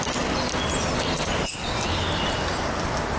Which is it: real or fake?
real